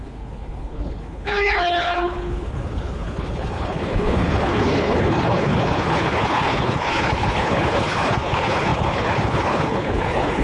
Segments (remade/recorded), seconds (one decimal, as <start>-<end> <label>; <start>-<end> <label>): 0.0-10.4 remade